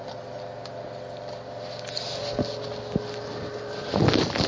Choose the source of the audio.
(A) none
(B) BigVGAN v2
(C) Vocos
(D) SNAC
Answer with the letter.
A